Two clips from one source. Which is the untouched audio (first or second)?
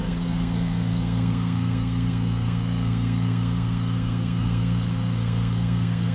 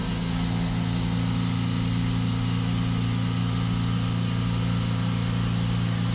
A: second